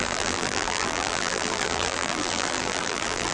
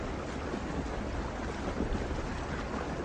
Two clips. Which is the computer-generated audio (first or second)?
first